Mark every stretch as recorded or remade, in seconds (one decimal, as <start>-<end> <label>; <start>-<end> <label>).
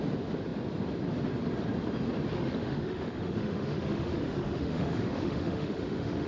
0.0-2.3 recorded; 2.3-6.3 remade